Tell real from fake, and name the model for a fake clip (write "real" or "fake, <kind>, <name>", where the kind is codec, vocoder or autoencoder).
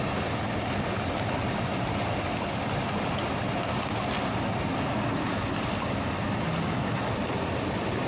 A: real